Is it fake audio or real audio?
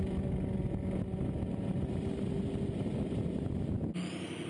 real